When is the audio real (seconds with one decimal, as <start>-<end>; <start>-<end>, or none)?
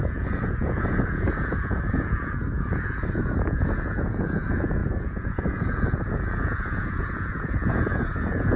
none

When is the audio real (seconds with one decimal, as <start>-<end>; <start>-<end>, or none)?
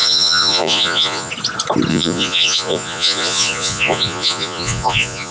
1.3-1.9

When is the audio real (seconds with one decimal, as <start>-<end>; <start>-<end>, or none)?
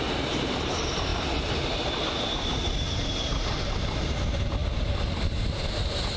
0.0-6.2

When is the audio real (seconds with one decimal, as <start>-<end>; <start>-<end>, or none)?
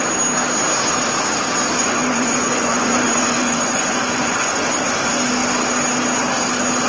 0.0-1.8; 4.6-6.9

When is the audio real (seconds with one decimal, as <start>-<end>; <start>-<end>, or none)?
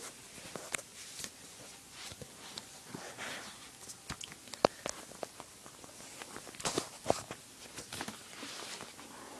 0.0-0.9; 3.3-9.4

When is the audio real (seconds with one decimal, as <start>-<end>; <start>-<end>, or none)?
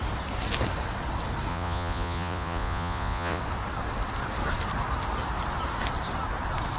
0.0-1.5; 3.4-6.8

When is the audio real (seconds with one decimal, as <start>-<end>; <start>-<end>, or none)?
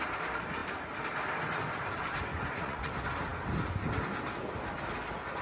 0.0-2.3; 2.9-5.4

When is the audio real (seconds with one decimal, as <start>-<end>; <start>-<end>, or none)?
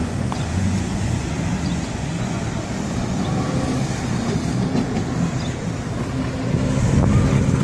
2.4-7.6